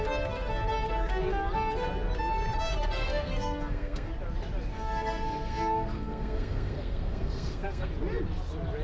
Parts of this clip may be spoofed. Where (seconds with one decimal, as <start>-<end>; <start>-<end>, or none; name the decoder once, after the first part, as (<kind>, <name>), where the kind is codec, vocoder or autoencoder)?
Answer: 2.7-4.1 (codec, SNAC); 4.7-7.9